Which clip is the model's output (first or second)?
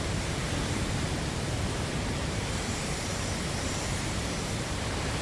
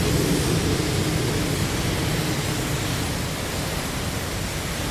first